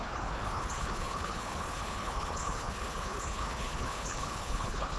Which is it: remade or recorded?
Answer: remade